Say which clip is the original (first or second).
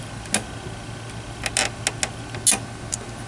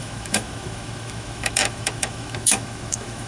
first